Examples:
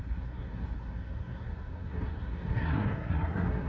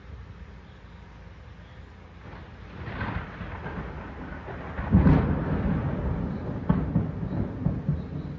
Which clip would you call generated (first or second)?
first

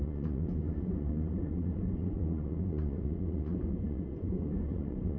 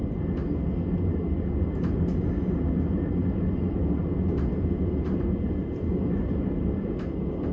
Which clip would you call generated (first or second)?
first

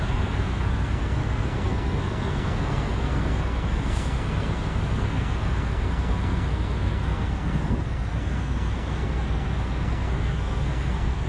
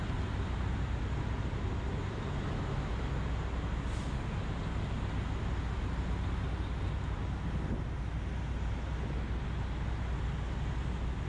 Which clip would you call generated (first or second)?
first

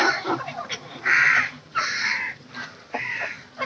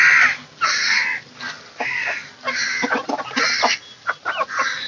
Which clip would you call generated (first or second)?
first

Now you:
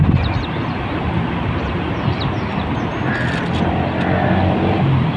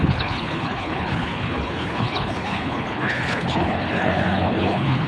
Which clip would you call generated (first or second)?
second